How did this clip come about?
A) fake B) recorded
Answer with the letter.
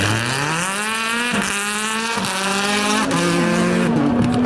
B